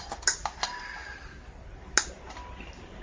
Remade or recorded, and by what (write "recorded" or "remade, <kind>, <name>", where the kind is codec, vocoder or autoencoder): recorded